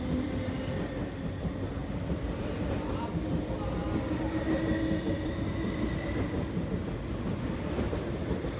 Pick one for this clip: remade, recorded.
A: recorded